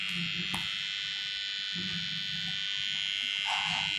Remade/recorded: recorded